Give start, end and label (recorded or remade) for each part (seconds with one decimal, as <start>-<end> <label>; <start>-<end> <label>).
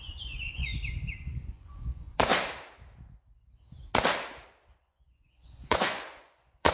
0.0-0.7 remade; 0.7-1.5 recorded; 1.5-2.3 remade; 2.3-4.8 recorded; 4.8-6.7 remade